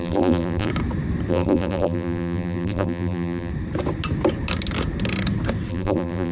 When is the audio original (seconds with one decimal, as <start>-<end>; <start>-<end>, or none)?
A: 0.7-1.3; 3.5-5.7